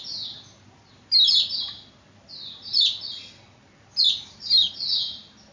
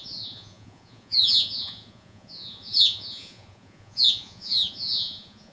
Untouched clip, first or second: first